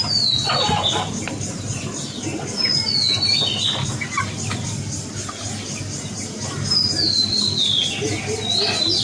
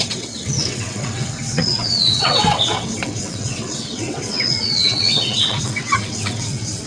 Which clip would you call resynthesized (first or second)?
second